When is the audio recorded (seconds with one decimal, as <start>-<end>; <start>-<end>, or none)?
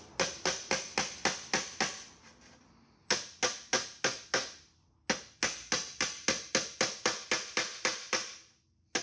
0.0-9.0